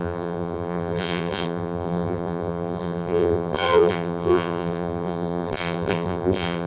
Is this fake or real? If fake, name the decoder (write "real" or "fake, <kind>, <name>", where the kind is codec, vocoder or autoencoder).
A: fake, vocoder, BigVGAN v2